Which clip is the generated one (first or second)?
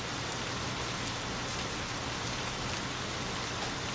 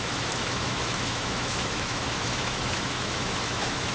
second